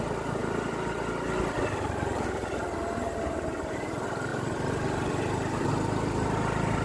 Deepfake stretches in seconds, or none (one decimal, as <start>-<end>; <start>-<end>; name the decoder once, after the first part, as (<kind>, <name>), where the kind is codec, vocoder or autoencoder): none